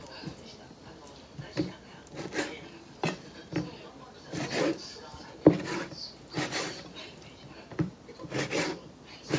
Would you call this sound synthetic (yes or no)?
no